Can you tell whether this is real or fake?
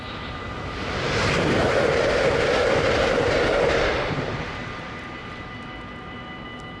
real